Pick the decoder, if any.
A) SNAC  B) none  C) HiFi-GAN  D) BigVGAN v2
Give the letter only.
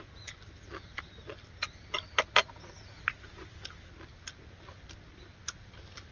B